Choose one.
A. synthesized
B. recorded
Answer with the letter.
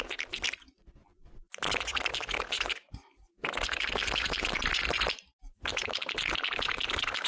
A